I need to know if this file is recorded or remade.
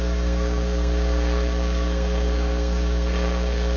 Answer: remade